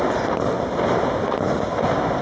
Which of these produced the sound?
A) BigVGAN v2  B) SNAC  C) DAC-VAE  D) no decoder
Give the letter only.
D